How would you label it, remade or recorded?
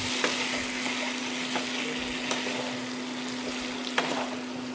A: recorded